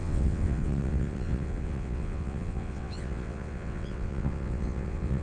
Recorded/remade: remade